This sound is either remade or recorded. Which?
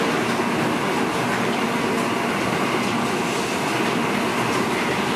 recorded